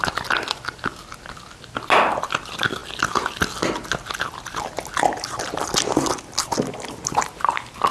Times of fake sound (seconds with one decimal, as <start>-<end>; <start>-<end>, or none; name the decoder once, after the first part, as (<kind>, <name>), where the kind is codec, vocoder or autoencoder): none